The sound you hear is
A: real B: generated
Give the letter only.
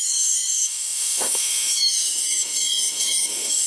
B